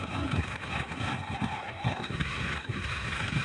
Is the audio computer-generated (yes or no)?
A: yes